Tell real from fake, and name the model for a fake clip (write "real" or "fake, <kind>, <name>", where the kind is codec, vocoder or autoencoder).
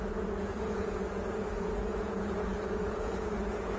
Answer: fake, vocoder, Vocos